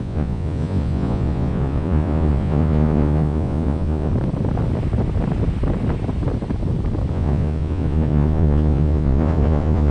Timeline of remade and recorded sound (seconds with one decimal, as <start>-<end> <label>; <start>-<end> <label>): 0.0-4.1 remade; 4.1-7.1 recorded; 7.1-9.9 remade